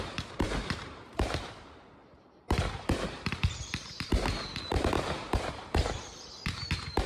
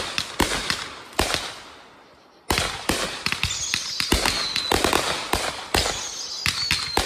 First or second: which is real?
second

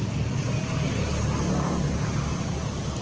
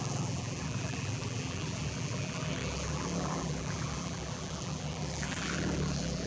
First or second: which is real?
first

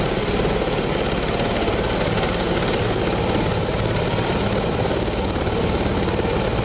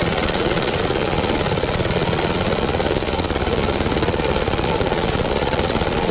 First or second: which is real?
first